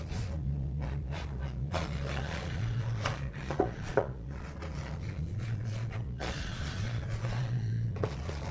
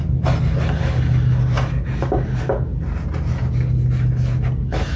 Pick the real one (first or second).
second